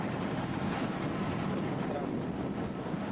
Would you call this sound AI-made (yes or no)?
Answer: no